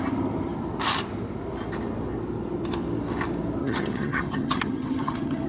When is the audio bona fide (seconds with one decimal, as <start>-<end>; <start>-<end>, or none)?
0.0-3.6